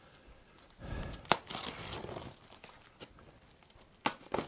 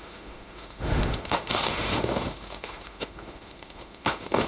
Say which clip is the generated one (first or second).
second